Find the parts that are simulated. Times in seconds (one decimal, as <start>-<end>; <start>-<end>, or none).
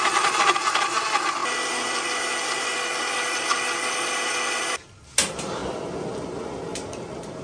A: none